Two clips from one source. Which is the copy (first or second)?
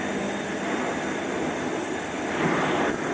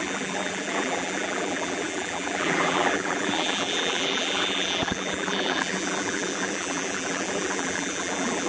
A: second